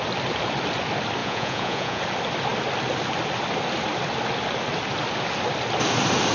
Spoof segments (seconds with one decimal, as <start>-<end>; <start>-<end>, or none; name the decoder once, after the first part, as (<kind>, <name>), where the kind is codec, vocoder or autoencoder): 1.2-2.0 (vocoder, Vocos)